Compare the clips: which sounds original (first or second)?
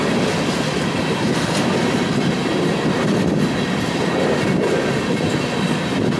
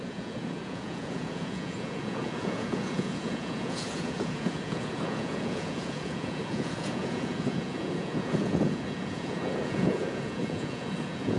first